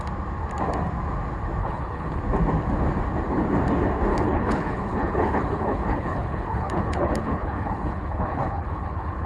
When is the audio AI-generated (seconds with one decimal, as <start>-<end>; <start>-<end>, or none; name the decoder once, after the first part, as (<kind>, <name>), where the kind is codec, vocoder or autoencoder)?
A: 1.6-2.2 (codec, HILCodec); 4.1-9.3